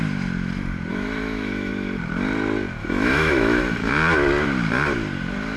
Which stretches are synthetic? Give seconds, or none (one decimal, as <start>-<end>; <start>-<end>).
0.9-1.7; 2.8-3.9